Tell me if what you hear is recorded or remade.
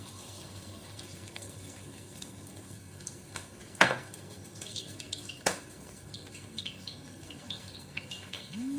remade